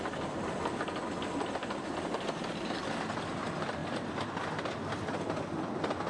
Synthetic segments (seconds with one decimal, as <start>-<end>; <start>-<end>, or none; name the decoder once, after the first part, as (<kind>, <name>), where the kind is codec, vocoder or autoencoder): none